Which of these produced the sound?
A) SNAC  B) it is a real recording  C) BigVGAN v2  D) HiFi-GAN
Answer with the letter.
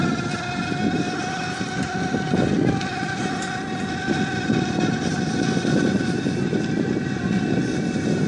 B